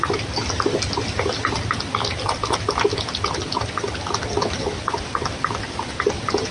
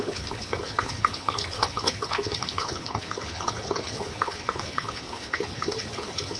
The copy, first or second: second